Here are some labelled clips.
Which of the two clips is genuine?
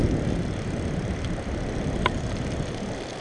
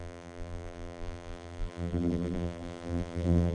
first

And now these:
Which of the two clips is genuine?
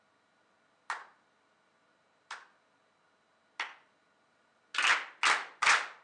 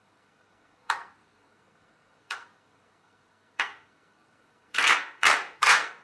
first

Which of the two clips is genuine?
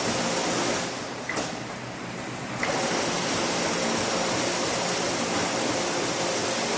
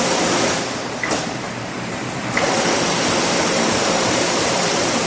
first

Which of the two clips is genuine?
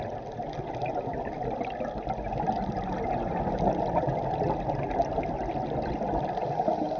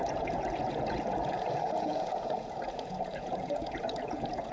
first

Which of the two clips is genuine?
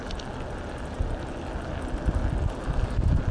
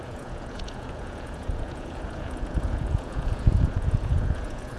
first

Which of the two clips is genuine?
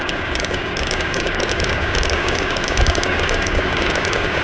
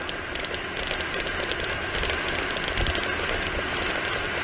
second